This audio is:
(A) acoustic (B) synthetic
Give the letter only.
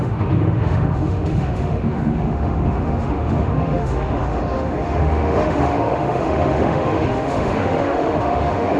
B